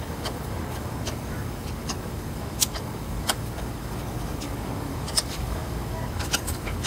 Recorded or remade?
remade